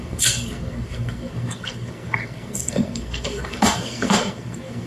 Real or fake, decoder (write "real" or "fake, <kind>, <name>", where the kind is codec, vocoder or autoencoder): fake, codec, SNAC